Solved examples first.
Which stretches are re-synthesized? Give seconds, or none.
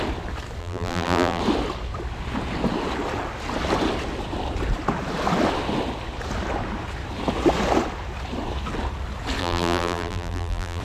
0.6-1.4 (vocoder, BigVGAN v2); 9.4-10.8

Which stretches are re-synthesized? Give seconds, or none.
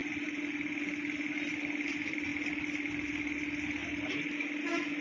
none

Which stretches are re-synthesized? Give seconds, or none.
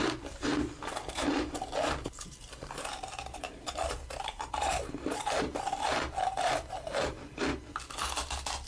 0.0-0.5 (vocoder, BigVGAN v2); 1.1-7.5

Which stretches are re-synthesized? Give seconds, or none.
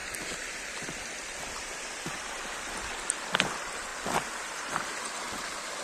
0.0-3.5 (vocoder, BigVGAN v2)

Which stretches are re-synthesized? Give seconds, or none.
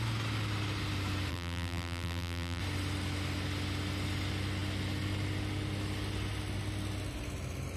1.3-2.6 (vocoder, BigVGAN v2)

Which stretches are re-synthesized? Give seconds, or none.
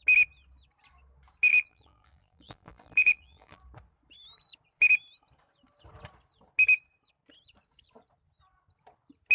1.5-3.6 (vocoder, BigVGAN v2)